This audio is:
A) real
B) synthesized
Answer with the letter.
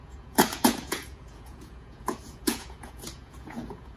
B